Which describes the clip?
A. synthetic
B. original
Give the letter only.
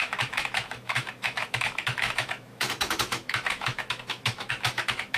A